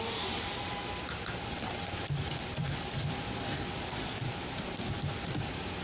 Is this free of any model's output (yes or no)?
no